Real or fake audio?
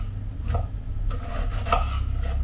real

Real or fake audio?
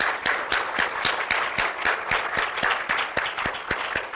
real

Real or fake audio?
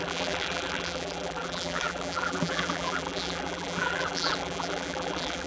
fake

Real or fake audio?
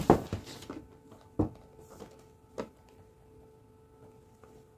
real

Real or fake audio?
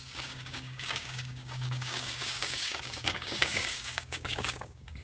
fake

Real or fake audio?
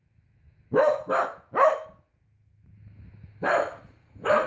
fake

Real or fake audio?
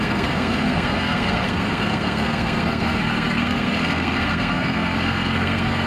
fake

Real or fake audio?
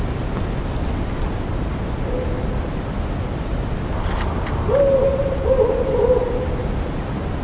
real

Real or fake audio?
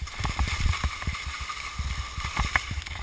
fake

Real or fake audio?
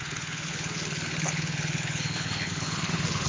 fake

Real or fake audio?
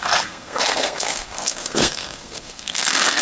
fake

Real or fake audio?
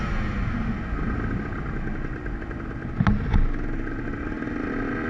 real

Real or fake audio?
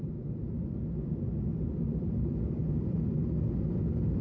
real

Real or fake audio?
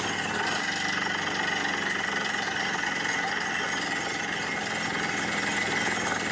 real